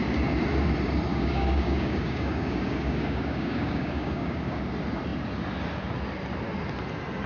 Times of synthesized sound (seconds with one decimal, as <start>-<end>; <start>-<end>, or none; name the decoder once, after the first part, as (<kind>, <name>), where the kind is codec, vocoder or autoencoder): 1.1-4.6 (codec, DAC)